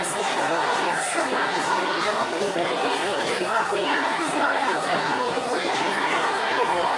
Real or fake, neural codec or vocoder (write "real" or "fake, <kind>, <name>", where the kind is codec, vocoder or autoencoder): fake, codec, SNAC